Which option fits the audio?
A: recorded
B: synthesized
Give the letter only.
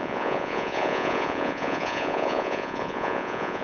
B